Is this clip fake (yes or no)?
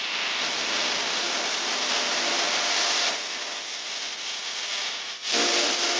no